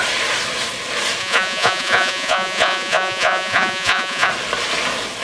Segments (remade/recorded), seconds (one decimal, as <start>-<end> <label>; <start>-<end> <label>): 0.0-1.2 recorded; 1.2-4.3 remade; 4.3-5.2 recorded